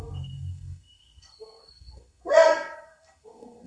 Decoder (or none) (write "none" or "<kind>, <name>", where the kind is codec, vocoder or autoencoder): codec, SNAC